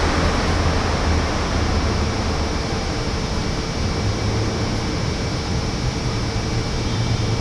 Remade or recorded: recorded